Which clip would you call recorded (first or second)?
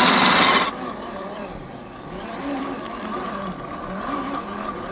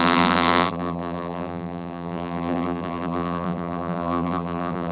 first